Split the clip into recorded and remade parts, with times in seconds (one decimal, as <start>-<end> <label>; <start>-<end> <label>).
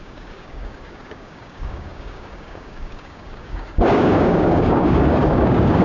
0.0-5.8 remade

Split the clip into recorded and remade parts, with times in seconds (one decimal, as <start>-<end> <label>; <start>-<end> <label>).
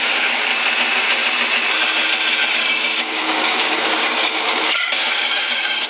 0.0-0.5 remade; 0.5-2.5 recorded; 2.5-5.9 remade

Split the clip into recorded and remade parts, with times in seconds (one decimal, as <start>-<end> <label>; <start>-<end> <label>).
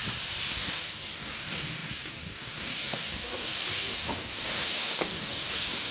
0.0-0.5 recorded; 0.5-5.9 remade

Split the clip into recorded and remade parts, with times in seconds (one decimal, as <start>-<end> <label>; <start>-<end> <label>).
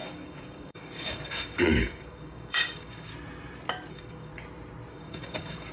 0.0-3.1 remade; 3.1-3.9 recorded; 3.9-4.3 remade; 4.3-4.9 recorded; 4.9-5.7 remade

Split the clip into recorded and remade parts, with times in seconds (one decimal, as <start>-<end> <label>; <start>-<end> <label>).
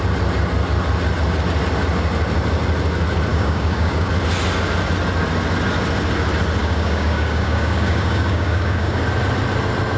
0.0-3.3 recorded; 3.3-4.1 remade; 4.1-6.6 recorded; 6.6-9.0 remade; 9.0-10.0 recorded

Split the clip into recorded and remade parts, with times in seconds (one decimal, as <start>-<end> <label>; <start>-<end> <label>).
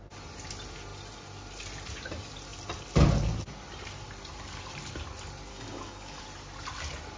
0.0-5.5 recorded; 5.5-6.2 remade; 6.2-7.2 recorded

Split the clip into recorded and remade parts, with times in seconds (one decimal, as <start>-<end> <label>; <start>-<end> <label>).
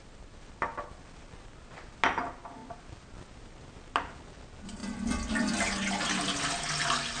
0.0-7.2 recorded